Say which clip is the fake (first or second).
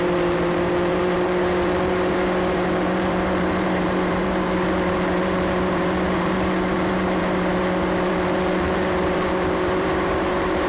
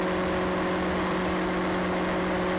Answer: first